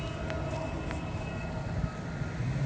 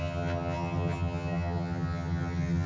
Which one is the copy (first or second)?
second